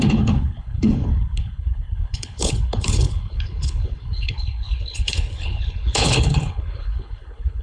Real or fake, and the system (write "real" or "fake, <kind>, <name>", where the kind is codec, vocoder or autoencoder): fake, codec, HILCodec